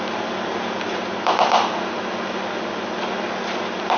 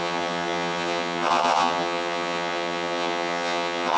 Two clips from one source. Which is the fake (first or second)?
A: second